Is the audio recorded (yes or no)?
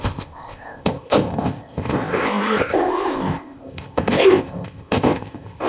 no